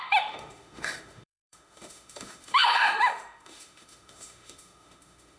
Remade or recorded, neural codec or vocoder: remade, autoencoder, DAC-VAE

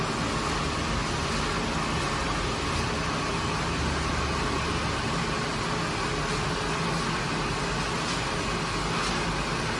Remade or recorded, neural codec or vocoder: recorded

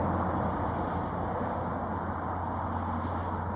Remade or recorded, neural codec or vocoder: recorded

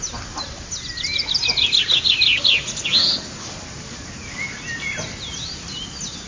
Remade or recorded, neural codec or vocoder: recorded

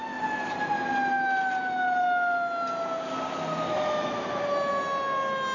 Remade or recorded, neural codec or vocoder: recorded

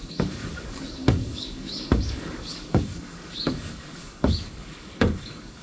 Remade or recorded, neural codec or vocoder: remade, codec, DAC